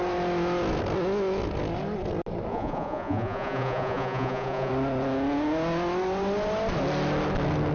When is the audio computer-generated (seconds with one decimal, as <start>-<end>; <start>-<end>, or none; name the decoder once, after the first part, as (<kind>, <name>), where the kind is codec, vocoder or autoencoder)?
2.5-4.7 (vocoder, Vocos)